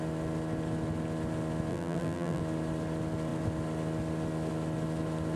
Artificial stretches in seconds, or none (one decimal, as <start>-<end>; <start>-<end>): 1.7-2.4